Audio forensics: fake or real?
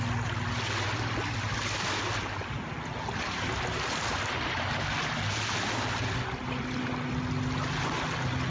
real